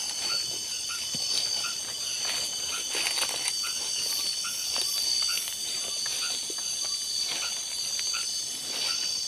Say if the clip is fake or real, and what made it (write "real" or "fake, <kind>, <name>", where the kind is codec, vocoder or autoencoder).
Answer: real